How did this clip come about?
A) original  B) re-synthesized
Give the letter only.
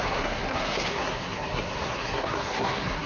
B